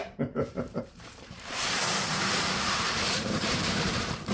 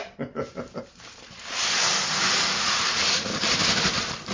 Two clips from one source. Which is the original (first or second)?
second